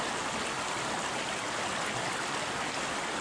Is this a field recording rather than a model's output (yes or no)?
yes